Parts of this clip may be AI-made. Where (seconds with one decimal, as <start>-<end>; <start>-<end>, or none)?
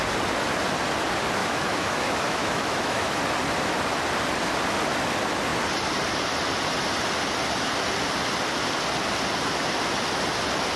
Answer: 1.4-3.2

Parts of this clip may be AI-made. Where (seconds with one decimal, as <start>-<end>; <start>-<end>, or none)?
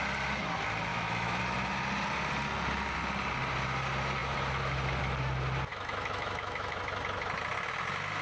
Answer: 0.9-1.4; 5.7-6.8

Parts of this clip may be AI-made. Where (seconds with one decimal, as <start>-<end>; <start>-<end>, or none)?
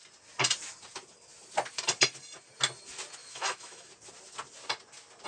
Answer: 3.2-3.9